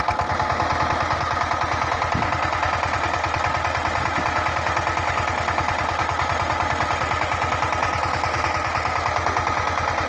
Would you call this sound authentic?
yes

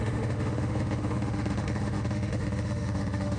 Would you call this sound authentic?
no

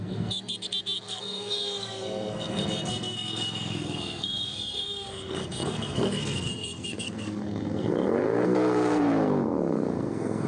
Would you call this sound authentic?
no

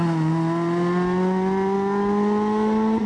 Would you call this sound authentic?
yes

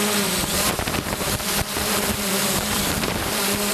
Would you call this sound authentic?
no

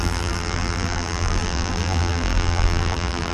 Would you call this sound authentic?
no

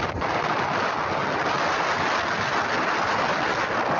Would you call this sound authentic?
no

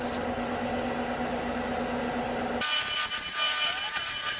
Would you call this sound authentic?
yes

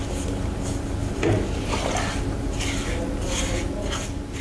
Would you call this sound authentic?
yes